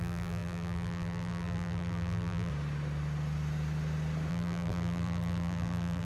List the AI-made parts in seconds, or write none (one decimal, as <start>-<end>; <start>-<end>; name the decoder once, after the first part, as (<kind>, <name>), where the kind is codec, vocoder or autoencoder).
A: 0.0-2.5 (vocoder, BigVGAN v2); 4.3-6.0